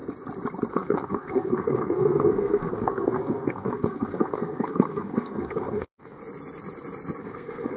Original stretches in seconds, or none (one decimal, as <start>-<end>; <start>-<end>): 0.0-0.7; 6.2-7.2